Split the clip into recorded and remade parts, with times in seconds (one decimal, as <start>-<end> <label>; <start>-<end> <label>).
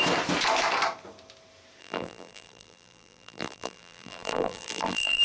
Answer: 0.0-1.8 recorded; 1.8-5.2 remade